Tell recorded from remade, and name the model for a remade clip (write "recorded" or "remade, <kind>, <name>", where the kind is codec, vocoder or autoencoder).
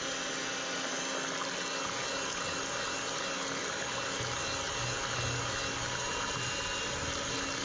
recorded